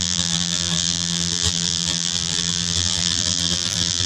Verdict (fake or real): fake